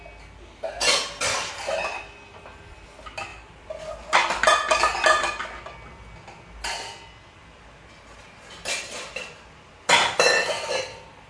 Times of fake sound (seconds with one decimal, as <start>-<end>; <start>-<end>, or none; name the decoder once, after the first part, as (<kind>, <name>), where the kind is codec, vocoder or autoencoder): none